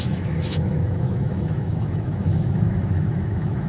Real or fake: fake